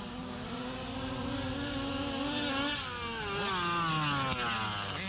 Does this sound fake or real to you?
real